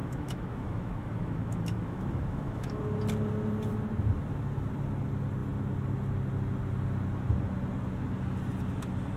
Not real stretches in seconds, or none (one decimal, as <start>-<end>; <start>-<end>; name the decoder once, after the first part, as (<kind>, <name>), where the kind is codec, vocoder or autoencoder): 0.0-2.8 (autoencoder, DAC-VAE)